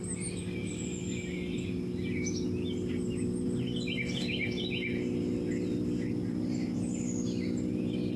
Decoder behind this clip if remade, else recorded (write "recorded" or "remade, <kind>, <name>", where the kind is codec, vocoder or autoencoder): recorded